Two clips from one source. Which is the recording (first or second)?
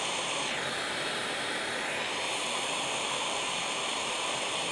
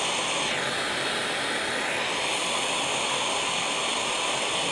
second